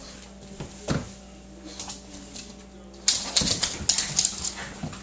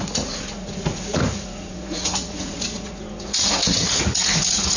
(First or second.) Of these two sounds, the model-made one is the second